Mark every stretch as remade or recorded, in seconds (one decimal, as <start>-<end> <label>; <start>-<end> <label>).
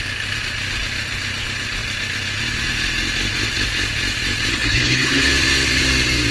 0.0-4.5 recorded; 4.5-5.3 remade; 5.3-6.3 recorded